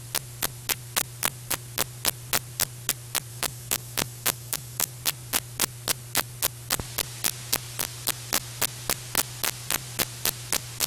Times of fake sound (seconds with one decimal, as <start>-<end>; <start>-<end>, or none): 3.3-4.9